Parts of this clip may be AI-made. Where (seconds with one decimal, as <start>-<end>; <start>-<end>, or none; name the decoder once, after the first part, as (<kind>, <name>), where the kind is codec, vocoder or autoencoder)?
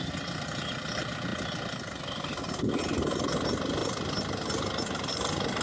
none